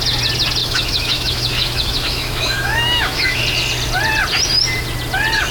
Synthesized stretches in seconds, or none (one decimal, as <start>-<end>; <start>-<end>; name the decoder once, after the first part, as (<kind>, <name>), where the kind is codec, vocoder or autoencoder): 0.6-3.4 (autoencoder, DAC-VAE)